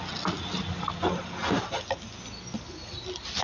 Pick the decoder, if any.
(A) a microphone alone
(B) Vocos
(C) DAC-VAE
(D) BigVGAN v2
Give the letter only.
A